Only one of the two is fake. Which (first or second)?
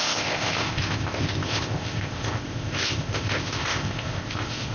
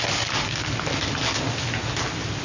first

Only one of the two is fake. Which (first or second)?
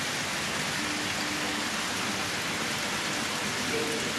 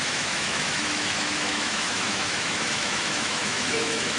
second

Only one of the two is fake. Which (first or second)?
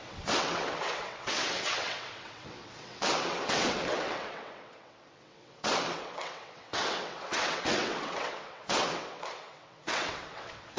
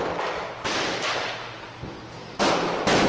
first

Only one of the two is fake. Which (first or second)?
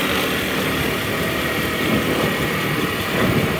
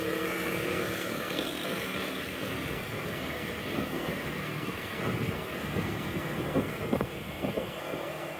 second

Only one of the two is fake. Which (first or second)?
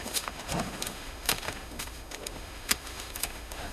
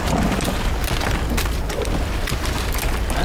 first